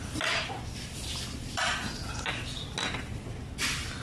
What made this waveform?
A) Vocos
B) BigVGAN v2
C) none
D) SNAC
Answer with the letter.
C